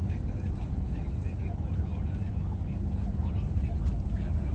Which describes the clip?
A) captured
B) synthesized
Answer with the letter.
A